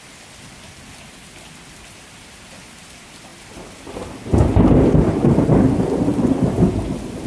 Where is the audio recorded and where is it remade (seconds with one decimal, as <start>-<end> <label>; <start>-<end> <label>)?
0.0-7.3 recorded

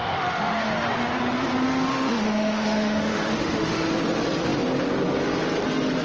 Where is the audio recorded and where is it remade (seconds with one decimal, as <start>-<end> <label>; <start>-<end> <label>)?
0.0-0.7 remade; 0.7-1.9 recorded; 1.9-3.9 remade; 3.9-6.0 recorded

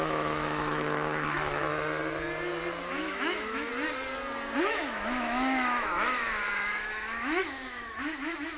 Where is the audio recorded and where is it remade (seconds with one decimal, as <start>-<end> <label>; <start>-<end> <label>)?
0.0-1.7 remade; 1.7-2.9 recorded; 2.9-3.7 remade; 3.7-4.6 recorded; 4.6-8.6 remade

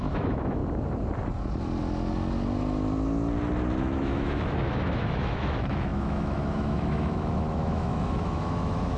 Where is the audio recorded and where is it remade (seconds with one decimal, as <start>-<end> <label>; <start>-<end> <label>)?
0.0-0.6 remade; 0.6-3.8 recorded; 3.8-9.0 remade